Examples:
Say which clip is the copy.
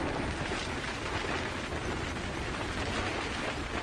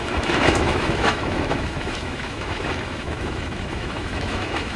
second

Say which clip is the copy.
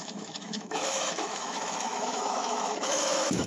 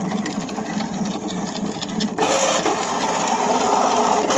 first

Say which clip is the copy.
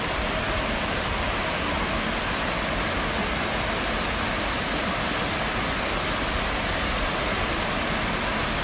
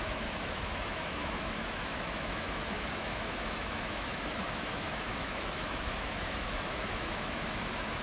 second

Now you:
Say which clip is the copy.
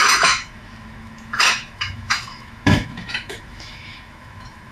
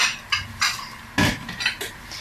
first